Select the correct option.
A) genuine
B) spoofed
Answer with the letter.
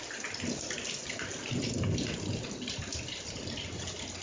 A